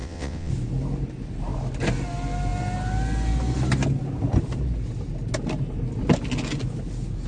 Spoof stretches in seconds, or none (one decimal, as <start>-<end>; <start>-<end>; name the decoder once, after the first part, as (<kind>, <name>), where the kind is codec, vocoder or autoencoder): 0.0-0.5 (vocoder, WaveNeXt)